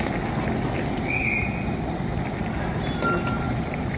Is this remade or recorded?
recorded